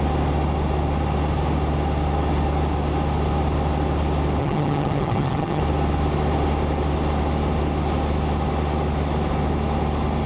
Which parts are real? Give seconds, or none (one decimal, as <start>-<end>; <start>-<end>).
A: 0.0-4.4; 5.6-10.3